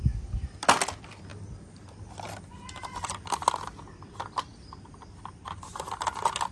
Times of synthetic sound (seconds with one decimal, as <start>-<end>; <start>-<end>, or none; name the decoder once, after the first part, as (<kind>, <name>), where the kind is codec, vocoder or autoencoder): none